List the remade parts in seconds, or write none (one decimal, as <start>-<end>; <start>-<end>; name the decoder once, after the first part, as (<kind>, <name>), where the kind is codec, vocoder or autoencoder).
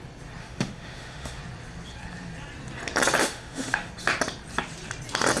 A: 0.4-1.4 (autoencoder, DAC-VAE); 3.2-3.9